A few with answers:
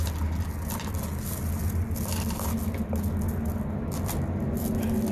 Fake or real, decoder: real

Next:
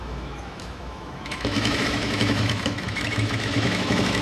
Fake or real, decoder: fake, autoencoder, DAC-VAE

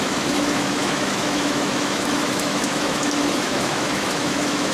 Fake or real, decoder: fake, autoencoder, DAC-VAE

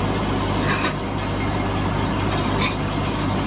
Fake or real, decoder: real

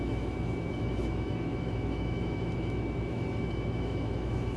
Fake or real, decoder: fake, autoencoder, DAC-VAE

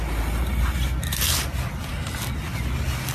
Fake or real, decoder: real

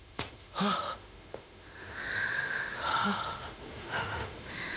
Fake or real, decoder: fake, autoencoder, DAC-VAE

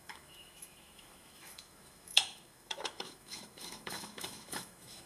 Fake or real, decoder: fake, autoencoder, DAC-VAE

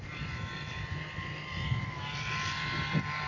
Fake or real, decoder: real